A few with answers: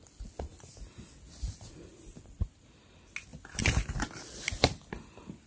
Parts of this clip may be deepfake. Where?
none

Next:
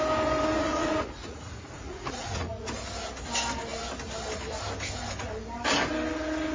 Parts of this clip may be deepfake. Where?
0.6-2.7 (vocoder, Vocos)

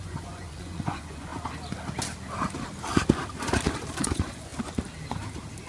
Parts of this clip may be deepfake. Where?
0.0-1.3 (vocoder, Vocos); 4.0-4.5

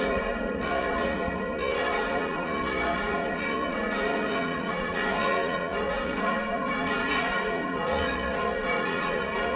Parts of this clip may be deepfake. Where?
0.0-9.6 (vocoder, Vocos)

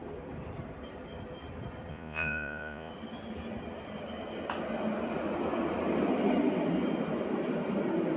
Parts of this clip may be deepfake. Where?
1.9-2.9 (vocoder, Vocos)